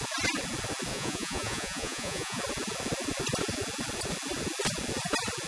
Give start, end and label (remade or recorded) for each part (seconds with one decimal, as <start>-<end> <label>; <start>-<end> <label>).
0.0-0.9 recorded; 0.9-2.4 remade; 2.4-5.5 recorded

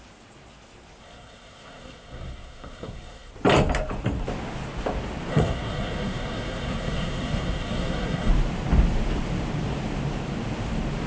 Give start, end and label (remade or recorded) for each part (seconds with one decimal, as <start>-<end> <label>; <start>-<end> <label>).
0.0-1.0 recorded; 1.0-3.3 remade; 3.3-5.3 recorded; 5.3-8.3 remade; 8.3-11.1 recorded

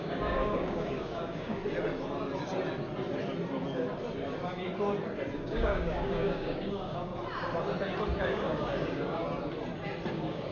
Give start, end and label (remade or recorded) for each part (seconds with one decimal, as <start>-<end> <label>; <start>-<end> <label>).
0.0-1.6 remade; 1.6-5.4 recorded; 5.4-7.1 remade; 7.1-8.2 recorded; 8.2-9.2 remade; 9.2-10.1 recorded; 10.1-10.5 remade

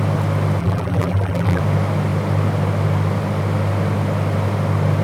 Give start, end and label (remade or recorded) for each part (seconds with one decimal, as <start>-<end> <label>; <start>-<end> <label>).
0.0-0.6 recorded; 0.6-1.6 remade; 1.6-5.0 recorded

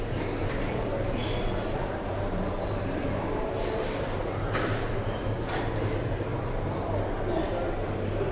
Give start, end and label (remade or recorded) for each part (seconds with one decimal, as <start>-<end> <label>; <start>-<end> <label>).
0.0-6.3 remade; 6.3-7.4 recorded; 7.4-8.3 remade

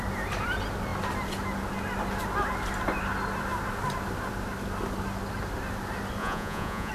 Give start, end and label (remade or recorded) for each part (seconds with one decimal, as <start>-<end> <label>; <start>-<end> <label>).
0.0-6.2 recorded; 6.2-6.9 remade

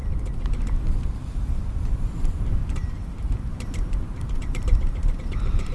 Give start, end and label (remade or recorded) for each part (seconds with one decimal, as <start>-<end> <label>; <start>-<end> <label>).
0.0-2.1 recorded; 2.1-5.7 remade